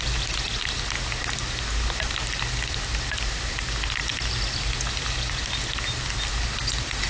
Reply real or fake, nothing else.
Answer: real